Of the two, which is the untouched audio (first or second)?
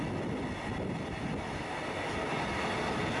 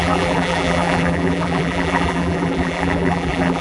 first